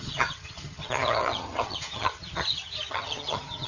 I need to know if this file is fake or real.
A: fake